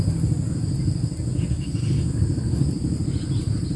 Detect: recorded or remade recorded